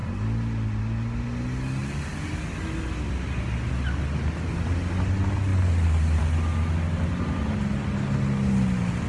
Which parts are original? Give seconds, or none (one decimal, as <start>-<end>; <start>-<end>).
0.0-9.1